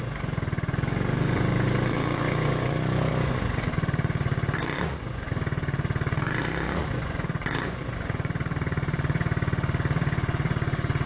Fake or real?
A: fake